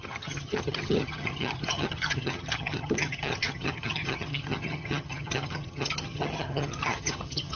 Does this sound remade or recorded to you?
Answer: remade